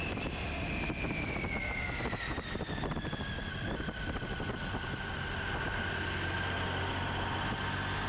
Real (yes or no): yes